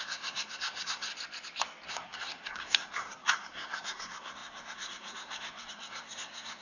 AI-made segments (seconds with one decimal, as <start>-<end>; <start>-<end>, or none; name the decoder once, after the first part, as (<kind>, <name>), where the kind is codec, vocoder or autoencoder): 0.0-1.1 (codec, SNAC); 1.9-6.6